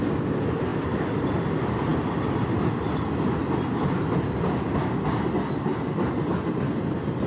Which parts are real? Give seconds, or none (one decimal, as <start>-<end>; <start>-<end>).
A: 0.0-7.3